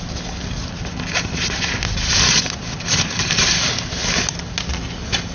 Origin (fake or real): real